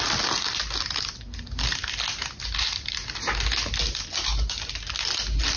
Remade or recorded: recorded